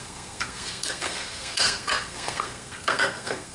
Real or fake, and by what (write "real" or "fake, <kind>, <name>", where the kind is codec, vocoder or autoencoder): fake, codec, SNAC